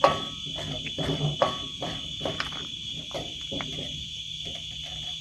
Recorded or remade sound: remade